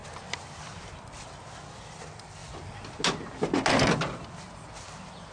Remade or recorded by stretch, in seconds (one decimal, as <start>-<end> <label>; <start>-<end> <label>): 0.0-5.3 recorded